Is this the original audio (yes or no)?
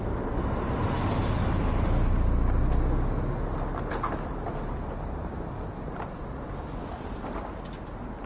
yes